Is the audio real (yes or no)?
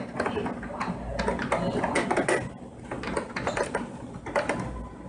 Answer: yes